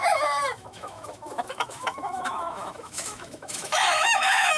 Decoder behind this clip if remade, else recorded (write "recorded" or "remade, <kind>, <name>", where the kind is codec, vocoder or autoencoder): remade, autoencoder, DAC-VAE